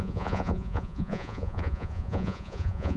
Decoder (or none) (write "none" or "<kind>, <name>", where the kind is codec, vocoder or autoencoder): vocoder, Vocos